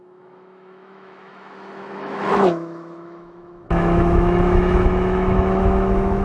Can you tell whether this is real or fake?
fake